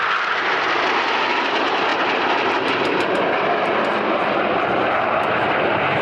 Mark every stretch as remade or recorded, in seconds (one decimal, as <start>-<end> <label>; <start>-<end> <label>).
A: 0.0-6.0 recorded